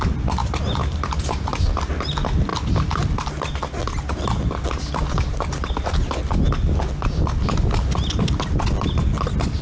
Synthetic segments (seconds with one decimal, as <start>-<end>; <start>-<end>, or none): 0.4-1.6